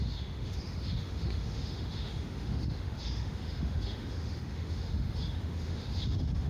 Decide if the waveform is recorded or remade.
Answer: remade